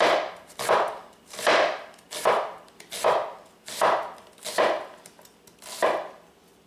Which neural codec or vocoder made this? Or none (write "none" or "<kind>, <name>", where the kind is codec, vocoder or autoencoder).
none